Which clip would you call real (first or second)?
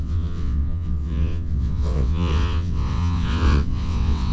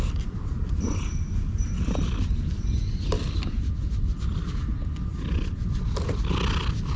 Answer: second